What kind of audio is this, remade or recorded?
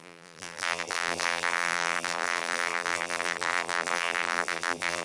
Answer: remade